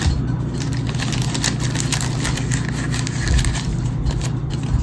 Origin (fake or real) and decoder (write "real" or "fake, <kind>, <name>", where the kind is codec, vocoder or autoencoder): real